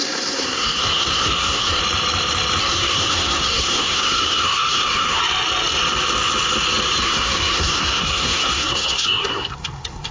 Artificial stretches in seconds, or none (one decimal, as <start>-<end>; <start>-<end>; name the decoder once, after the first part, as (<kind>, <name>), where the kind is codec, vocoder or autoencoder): 0.0-1.8 (codec, SNAC); 2.6-5.2; 7.0-10.1